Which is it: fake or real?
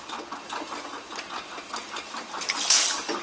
real